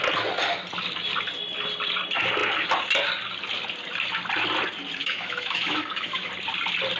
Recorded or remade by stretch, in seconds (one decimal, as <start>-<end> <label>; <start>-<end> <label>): 0.0-5.0 recorded; 5.0-6.3 remade; 6.3-7.0 recorded